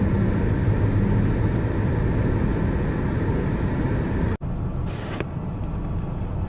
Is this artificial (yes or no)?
no